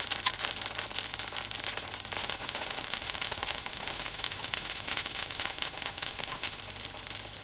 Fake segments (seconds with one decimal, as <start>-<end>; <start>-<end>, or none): 2.2-6.6